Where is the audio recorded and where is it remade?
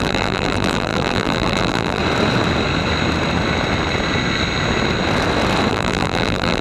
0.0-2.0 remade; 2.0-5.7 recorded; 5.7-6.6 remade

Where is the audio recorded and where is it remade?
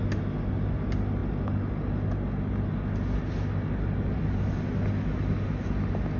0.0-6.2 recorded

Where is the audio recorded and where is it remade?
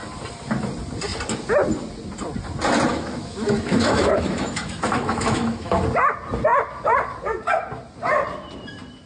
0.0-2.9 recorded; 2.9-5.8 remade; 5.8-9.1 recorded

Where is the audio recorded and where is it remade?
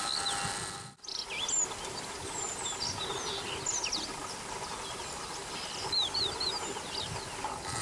0.0-7.8 recorded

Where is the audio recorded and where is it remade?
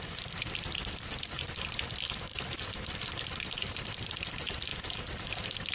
0.0-4.7 recorded; 4.7-5.3 remade; 5.3-5.7 recorded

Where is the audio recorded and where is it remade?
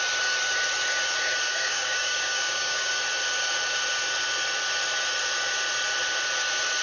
0.0-1.5 recorded; 1.5-2.9 remade; 2.9-6.8 recorded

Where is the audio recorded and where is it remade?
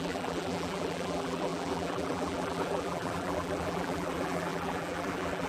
0.0-5.5 remade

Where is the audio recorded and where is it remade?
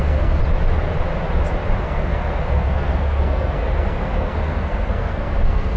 0.0-0.4 remade; 0.4-1.8 recorded; 1.8-5.8 remade